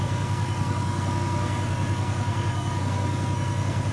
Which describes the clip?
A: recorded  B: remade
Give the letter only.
B